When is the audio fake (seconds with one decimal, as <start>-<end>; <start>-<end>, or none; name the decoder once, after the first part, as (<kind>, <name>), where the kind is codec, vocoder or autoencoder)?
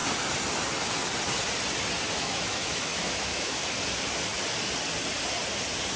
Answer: 2.1-3.6 (autoencoder, DAC-VAE)